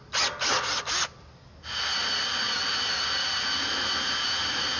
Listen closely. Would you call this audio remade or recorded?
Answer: recorded